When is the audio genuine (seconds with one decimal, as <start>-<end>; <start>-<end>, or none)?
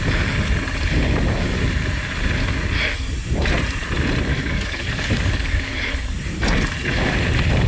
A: 0.0-4.3; 5.9-7.7